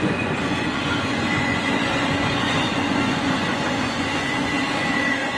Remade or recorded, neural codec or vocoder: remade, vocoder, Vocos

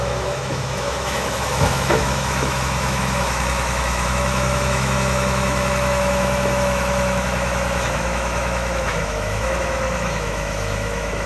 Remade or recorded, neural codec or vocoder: remade, autoencoder, DAC-VAE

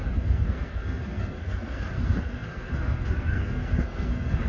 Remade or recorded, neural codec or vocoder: remade, codec, SNAC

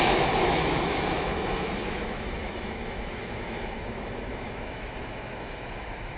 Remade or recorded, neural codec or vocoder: remade, autoencoder, DAC-VAE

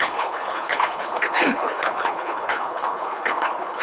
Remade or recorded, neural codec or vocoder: remade, codec, HILCodec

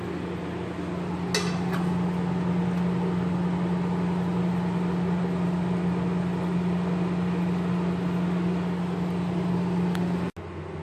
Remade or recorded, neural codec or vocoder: recorded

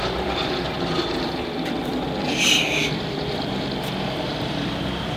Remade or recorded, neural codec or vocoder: remade, vocoder, BigVGAN v2